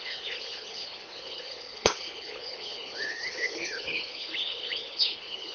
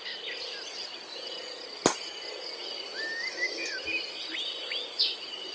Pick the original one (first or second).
second